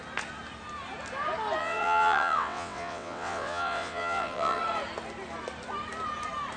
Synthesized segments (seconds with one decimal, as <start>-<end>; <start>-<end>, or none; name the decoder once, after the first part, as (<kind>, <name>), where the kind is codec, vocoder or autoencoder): 1.6-4.6 (vocoder, WaveNeXt)